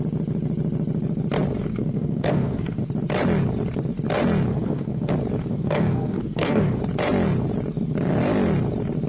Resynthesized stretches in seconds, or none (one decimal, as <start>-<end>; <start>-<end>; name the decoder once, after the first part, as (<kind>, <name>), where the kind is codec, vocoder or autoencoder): 1.7-2.8 (codec, SNAC); 4.5-5.1; 5.5-6.8